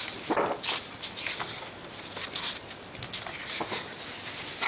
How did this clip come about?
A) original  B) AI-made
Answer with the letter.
A